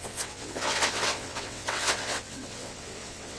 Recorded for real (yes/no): no